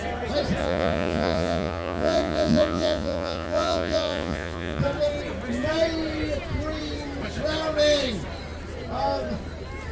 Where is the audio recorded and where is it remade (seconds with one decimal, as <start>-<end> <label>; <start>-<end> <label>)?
0.0-0.6 recorded; 0.6-4.8 remade; 4.8-9.9 recorded